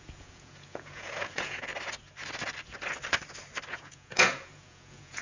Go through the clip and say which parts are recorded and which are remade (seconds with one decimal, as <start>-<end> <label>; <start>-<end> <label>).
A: 0.0-1.7 remade; 1.7-3.7 recorded; 3.7-5.2 remade